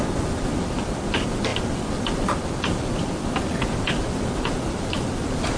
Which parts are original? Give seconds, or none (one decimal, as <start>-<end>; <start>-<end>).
0.0-5.6